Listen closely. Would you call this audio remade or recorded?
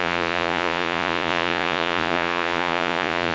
remade